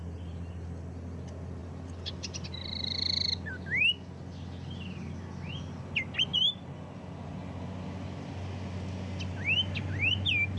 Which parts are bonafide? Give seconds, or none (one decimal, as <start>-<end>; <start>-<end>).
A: 0.0-10.6